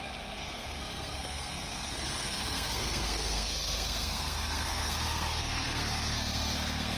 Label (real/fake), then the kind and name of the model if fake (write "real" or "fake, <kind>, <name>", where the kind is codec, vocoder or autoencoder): fake, codec, SNAC